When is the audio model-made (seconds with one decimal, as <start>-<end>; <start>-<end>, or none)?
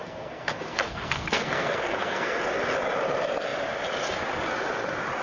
0.0-2.4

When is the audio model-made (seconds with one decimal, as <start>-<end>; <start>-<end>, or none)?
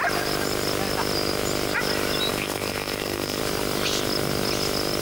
2.3-3.4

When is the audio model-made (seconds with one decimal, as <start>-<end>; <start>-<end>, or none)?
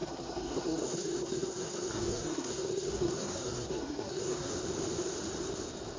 0.0-4.5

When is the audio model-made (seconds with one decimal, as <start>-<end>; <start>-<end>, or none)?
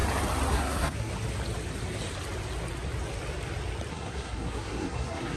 0.5-1.1; 3.9-5.4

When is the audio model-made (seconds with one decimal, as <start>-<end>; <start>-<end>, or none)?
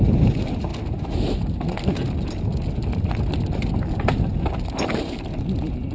none